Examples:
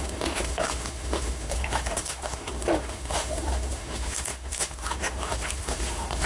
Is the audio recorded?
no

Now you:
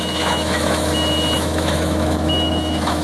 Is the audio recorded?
no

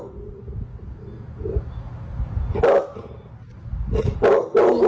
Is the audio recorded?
yes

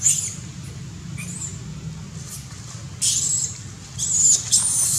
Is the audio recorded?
yes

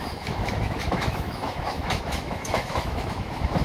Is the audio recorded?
no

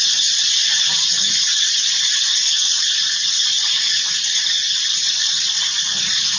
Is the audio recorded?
yes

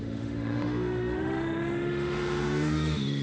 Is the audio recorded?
no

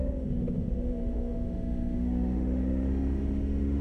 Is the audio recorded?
no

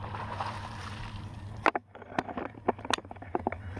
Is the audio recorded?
yes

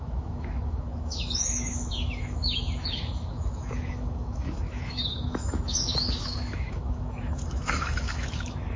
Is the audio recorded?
no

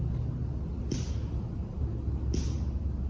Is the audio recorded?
yes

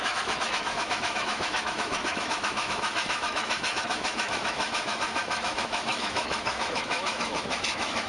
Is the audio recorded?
no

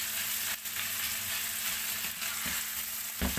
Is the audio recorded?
yes